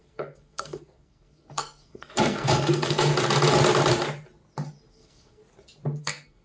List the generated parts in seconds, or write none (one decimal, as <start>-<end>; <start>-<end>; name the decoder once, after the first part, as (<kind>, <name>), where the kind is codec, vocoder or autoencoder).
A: 0.0-3.1 (codec, SNAC); 4.9-5.4; 6.0-6.4